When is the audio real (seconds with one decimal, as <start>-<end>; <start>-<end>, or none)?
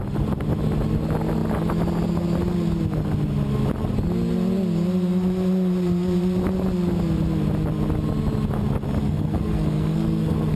0.0-9.0